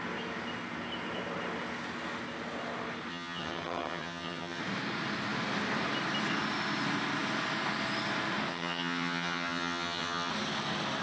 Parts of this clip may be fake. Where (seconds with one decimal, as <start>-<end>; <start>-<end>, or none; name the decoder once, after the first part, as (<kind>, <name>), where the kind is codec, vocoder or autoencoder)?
3.1-4.6 (vocoder, HiFi-GAN); 8.5-10.3